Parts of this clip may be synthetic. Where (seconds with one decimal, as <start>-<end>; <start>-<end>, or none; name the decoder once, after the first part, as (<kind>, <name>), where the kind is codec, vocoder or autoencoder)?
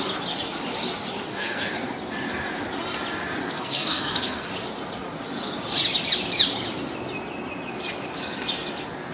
1.3-1.9 (codec, SNAC); 3.4-4.5